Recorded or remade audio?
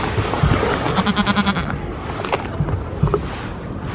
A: recorded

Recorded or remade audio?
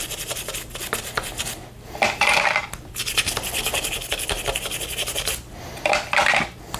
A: recorded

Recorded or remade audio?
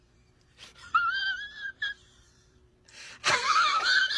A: remade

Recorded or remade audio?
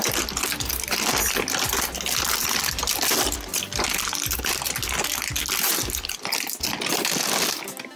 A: recorded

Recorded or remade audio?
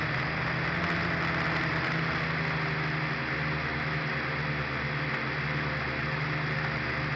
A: recorded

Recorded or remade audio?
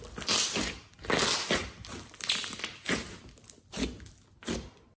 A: recorded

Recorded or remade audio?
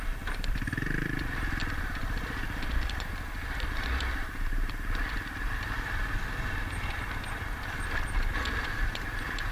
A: remade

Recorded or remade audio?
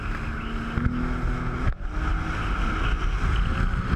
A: recorded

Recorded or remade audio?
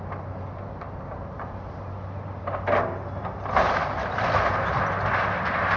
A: recorded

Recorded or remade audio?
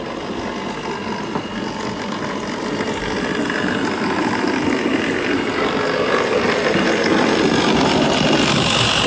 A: recorded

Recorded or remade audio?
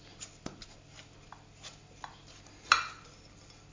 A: recorded